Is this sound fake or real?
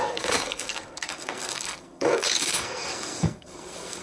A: fake